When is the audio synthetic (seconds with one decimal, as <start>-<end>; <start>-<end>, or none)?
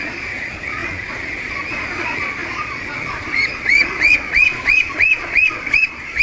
0.0-6.2